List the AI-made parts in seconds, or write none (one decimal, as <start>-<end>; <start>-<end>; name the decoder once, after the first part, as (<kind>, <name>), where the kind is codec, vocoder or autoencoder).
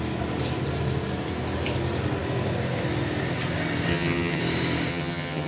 3.9-4.4 (vocoder, HiFi-GAN); 4.9-5.5